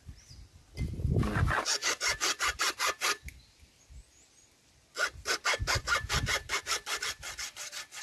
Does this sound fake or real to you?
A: real